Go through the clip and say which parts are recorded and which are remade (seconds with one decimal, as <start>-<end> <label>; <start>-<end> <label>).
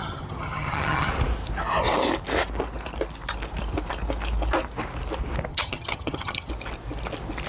0.0-1.1 remade; 1.1-5.5 recorded; 5.5-6.5 remade; 6.5-7.5 recorded